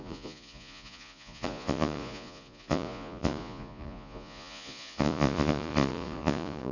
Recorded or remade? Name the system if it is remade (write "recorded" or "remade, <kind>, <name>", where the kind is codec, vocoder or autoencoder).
remade, vocoder, Vocos